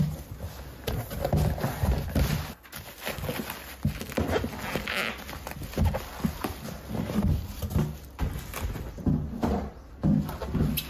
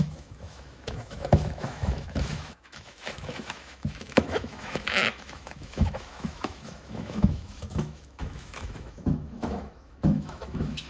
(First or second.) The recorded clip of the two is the first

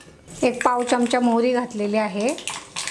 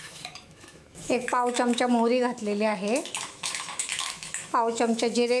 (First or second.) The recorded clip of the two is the first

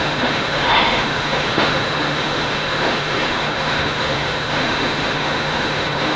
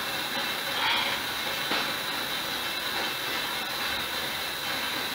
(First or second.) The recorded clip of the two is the second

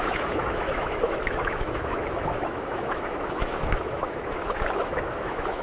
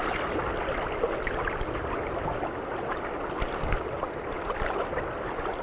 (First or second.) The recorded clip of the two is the second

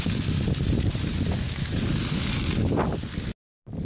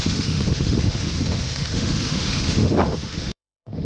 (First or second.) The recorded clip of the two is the first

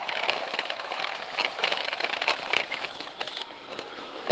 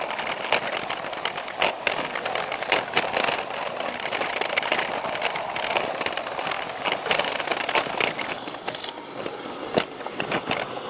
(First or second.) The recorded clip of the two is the second